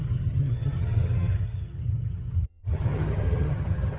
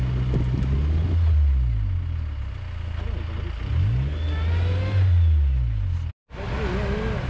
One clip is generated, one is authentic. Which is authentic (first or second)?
second